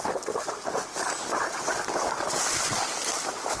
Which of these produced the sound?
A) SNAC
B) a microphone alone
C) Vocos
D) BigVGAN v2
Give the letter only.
B